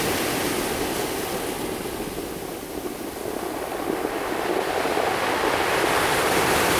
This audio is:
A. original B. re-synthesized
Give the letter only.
A